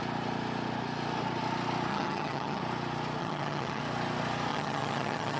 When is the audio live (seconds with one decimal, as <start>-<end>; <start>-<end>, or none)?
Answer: 0.0-1.9; 2.6-3.2; 3.8-4.5